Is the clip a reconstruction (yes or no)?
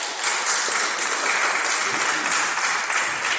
no